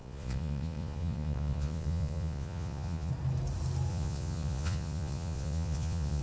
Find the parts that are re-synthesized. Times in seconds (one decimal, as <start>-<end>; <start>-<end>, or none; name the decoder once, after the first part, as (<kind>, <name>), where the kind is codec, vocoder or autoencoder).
0.0-3.1 (vocoder, Vocos); 3.9-6.2